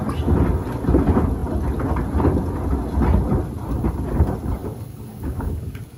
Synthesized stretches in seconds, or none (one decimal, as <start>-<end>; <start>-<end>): 4.6-6.0